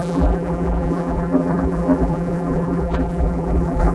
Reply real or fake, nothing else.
fake